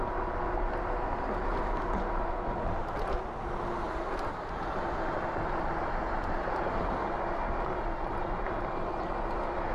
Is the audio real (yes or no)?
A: yes